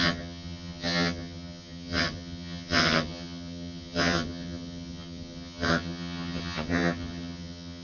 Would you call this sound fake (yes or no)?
yes